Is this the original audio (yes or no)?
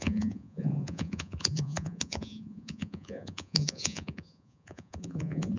no